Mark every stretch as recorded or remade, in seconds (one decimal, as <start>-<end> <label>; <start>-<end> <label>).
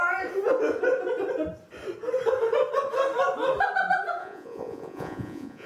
0.0-4.2 recorded; 4.2-5.7 remade